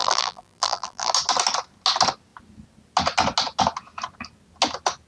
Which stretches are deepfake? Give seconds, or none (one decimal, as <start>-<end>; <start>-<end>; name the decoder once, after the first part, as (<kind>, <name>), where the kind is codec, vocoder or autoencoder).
0.0-1.1 (vocoder, BigVGAN v2)